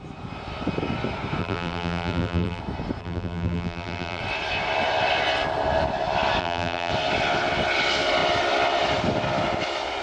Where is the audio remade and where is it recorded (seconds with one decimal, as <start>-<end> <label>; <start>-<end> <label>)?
0.0-1.4 recorded; 1.4-2.6 remade; 2.6-3.0 recorded; 3.0-4.2 remade; 4.2-6.4 recorded; 6.4-6.9 remade; 6.9-10.0 recorded